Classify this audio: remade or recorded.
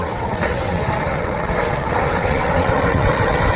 remade